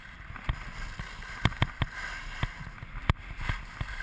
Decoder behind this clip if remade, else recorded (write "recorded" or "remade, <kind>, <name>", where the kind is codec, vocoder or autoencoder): recorded